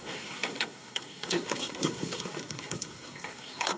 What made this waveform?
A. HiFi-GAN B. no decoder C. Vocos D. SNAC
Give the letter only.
D